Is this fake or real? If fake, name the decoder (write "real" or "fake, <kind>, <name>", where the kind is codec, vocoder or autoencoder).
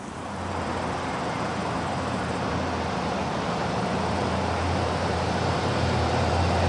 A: fake, vocoder, BigVGAN v2